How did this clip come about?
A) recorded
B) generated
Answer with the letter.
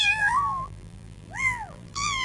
B